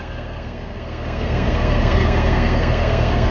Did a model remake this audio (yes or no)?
yes